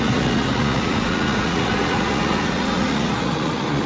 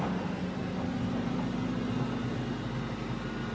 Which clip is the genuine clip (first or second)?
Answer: second